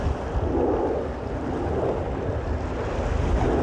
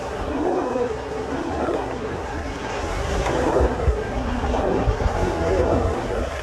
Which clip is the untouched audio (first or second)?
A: first